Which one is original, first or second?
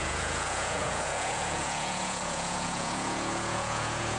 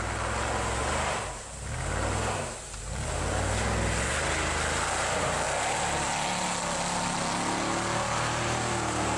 second